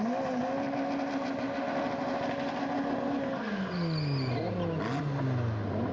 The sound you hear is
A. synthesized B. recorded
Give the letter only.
B